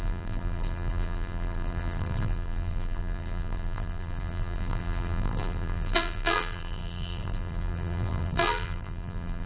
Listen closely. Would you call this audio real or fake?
fake